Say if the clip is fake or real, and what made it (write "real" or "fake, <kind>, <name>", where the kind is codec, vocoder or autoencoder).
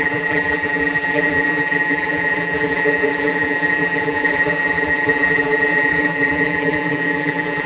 fake, vocoder, BigVGAN v2